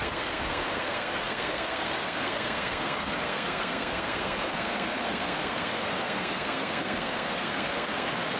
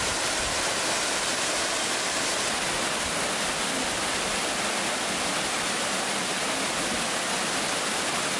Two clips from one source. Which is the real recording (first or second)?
second